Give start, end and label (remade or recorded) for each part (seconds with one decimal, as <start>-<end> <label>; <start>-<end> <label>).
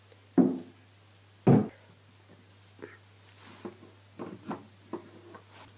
0.0-5.8 recorded